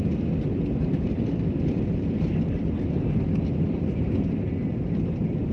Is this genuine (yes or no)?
yes